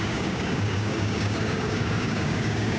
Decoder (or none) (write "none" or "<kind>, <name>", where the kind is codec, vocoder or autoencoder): codec, DAC